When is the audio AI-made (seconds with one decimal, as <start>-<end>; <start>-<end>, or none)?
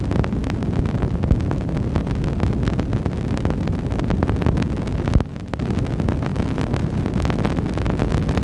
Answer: 6.3-7.1